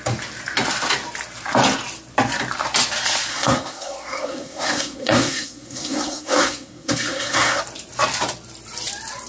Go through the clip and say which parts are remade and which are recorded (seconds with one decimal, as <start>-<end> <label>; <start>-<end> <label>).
0.0-3.3 recorded; 3.3-7.6 remade; 7.6-9.3 recorded